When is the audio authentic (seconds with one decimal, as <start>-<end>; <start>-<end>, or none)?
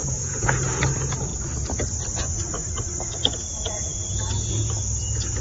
1.3-2.2; 2.6-3.5